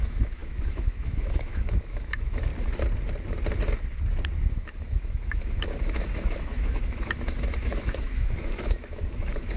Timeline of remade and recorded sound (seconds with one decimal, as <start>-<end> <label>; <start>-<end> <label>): 0.0-2.5 remade; 2.5-4.5 recorded; 4.5-9.6 remade